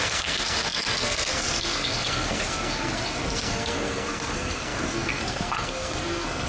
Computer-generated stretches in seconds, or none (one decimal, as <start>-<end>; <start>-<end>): 0.0-6.5